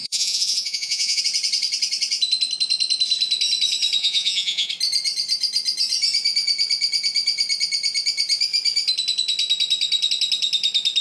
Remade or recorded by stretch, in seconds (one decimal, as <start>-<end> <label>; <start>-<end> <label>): 0.0-1.2 remade; 1.2-4.0 recorded; 4.0-4.7 remade; 4.7-11.0 recorded